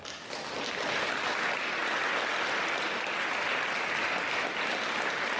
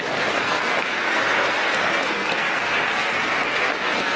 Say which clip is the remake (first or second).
second